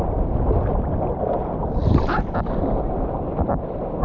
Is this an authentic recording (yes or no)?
yes